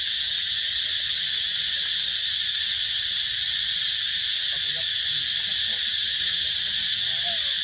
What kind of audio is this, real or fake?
real